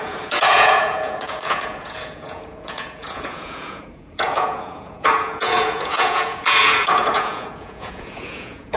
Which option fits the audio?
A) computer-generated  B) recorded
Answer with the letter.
A